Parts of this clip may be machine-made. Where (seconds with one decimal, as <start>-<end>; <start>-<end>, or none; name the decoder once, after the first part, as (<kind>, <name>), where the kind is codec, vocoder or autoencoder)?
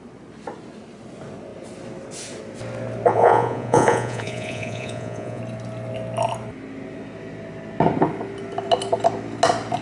3.1-5.4 (vocoder, Vocos)